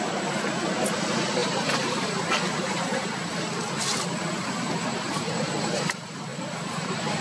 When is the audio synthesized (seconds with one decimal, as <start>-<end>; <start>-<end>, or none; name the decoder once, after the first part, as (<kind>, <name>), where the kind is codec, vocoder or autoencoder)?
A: 0.0-3.3 (vocoder, BigVGAN v2); 4.4-7.2